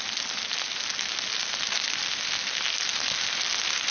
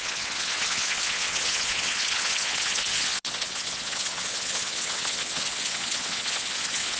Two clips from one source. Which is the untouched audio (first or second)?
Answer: first